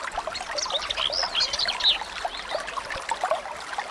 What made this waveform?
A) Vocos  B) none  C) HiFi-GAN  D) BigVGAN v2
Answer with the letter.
B